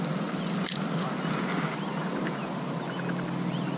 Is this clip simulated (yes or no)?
no